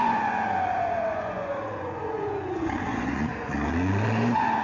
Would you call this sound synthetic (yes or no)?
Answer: yes